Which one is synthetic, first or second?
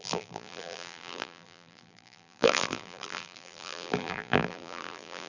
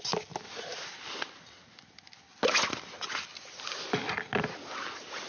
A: first